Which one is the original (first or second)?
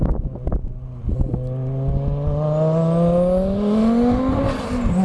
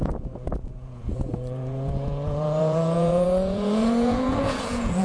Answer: first